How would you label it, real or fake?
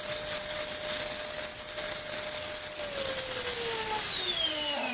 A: real